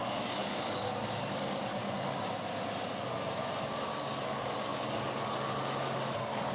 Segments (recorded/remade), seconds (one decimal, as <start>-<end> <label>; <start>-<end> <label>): 0.0-1.8 remade; 1.8-3.6 recorded; 3.6-6.5 remade